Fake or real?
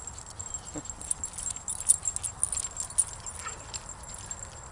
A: real